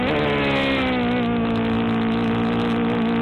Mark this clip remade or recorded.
recorded